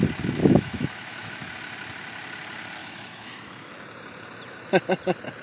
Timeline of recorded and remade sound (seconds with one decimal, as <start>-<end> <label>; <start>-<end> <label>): 0.0-0.4 recorded; 0.4-1.5 remade; 1.5-2.8 recorded; 2.8-3.7 remade; 3.7-5.4 recorded